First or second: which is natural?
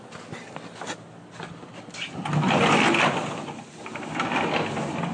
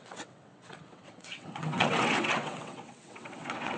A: first